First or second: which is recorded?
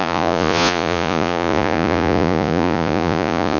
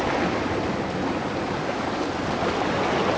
second